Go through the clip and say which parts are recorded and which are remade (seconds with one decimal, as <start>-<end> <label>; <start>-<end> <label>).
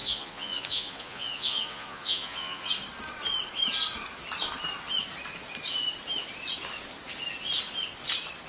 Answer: 0.0-2.7 remade; 2.7-8.5 recorded